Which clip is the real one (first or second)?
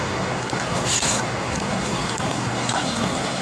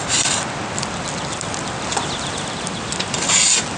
second